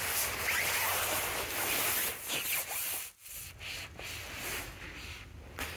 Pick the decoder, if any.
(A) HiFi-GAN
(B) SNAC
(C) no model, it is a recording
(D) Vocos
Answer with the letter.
C